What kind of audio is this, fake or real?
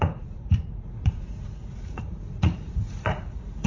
fake